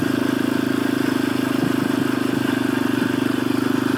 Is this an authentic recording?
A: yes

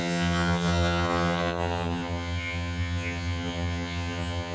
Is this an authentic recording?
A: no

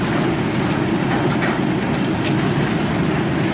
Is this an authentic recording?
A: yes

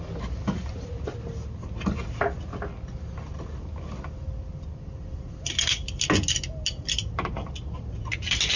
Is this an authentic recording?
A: yes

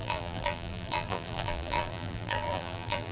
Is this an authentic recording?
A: no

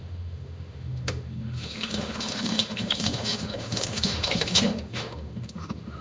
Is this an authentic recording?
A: no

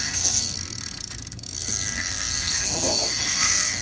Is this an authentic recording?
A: no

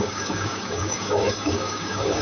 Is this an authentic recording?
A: no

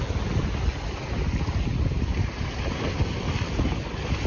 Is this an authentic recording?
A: yes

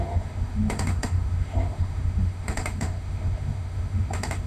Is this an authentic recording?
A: no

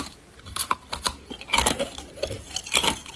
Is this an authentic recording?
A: no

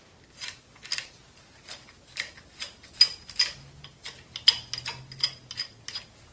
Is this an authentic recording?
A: yes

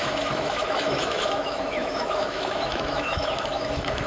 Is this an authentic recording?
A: no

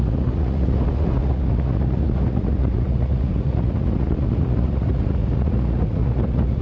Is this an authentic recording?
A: no